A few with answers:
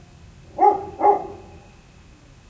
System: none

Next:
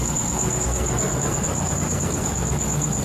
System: codec, SNAC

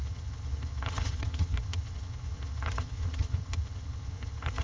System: vocoder, HiFi-GAN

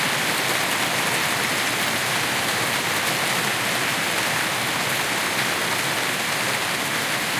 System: none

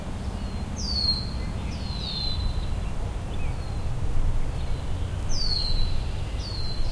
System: none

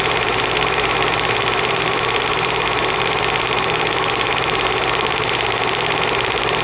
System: vocoder, BigVGAN v2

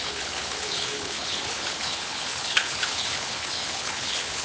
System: codec, HILCodec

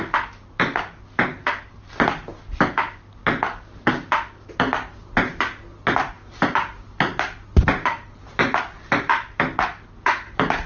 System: none